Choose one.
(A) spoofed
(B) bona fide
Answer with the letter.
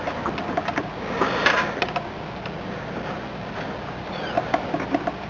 B